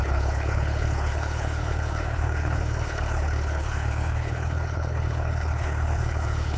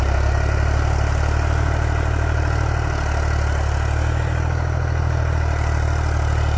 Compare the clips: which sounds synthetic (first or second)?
first